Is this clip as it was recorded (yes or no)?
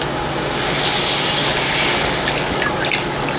yes